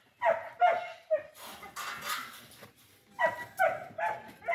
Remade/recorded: recorded